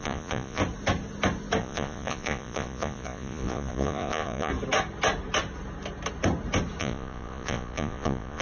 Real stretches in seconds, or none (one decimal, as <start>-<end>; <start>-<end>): 0.6-1.6; 4.5-6.8